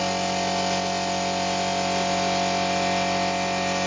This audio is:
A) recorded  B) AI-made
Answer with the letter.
A